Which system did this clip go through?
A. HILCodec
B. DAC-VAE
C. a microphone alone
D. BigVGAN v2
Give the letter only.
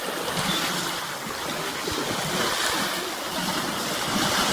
C